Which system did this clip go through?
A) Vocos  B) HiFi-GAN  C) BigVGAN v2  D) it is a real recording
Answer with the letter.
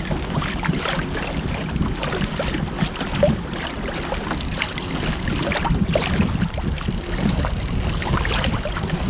D